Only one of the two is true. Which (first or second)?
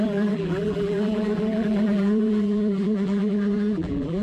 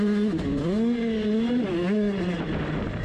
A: second